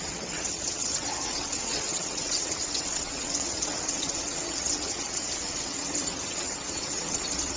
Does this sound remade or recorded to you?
remade